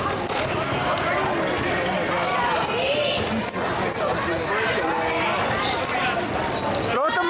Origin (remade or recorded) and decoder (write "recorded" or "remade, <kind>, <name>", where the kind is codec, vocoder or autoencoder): recorded